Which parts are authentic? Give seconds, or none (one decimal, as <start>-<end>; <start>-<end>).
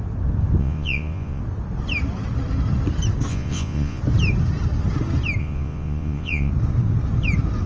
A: 0.0-0.6; 1.4-3.3; 4.0-5.4; 6.5-7.7